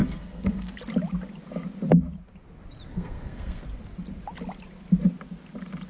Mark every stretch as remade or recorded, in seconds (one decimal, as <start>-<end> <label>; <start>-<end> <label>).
0.0-0.7 remade; 0.7-2.9 recorded; 2.9-3.6 remade; 3.6-5.9 recorded